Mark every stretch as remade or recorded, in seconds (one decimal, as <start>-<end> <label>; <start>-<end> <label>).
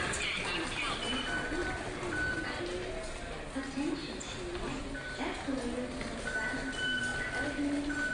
0.0-8.1 recorded